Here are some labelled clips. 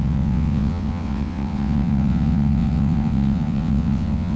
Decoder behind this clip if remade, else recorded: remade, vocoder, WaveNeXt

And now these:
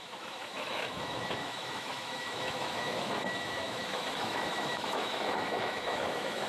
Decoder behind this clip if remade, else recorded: remade, autoencoder, DAC-VAE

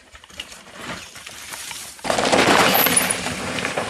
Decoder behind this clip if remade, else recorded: remade, vocoder, BigVGAN v2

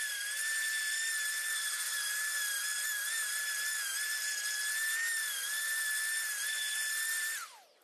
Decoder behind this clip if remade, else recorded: recorded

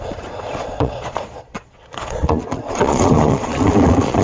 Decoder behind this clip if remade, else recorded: remade, vocoder, Vocos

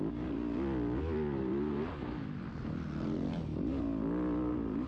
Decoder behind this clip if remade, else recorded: recorded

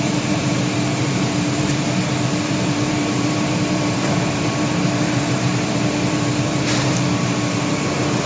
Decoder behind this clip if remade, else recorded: remade, vocoder, BigVGAN v2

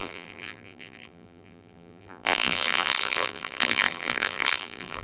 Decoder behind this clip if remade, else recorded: remade, vocoder, BigVGAN v2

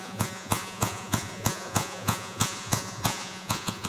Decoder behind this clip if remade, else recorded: remade, vocoder, Vocos